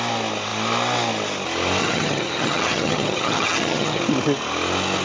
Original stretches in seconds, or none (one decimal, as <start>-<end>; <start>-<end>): 0.0-1.8; 4.0-5.0